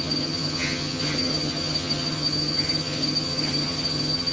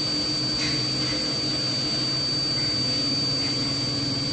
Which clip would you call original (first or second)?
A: second